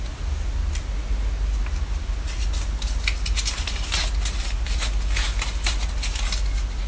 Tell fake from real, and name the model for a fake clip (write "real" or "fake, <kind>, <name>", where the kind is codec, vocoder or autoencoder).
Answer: real